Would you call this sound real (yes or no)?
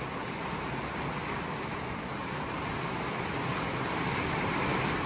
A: yes